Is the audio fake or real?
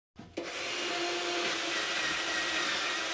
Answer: real